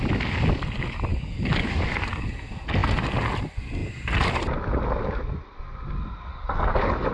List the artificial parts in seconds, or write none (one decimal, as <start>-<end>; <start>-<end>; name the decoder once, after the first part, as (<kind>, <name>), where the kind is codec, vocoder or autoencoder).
1.1-1.8 (codec, DAC); 6.3-7.1